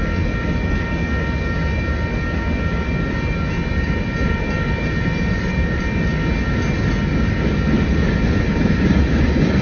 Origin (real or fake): real